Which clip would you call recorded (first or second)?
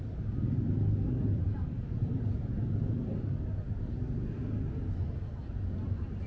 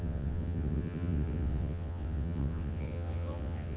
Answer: first